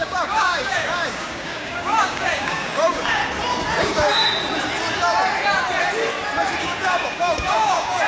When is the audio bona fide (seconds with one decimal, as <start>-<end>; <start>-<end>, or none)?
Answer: 3.2-3.8; 4.2-6.6